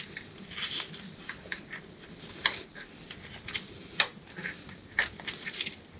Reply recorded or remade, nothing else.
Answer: recorded